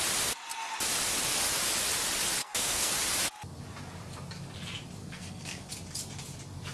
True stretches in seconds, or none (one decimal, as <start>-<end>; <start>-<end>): 0.0-2.4; 2.9-5.0; 5.7-6.7